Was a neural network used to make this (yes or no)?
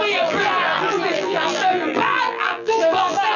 yes